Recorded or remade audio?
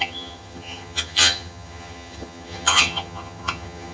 remade